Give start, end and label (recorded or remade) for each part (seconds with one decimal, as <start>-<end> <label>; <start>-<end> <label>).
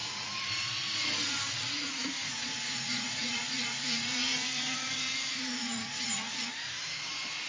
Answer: 0.0-7.5 remade